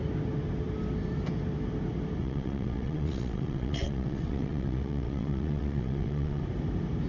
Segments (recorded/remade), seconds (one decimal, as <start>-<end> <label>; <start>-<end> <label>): 0.0-2.2 recorded; 2.2-6.4 remade; 6.4-7.1 recorded